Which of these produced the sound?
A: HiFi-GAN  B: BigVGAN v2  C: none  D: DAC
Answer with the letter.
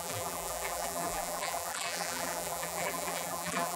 B